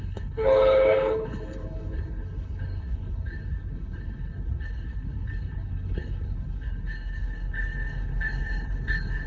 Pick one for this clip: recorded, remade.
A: remade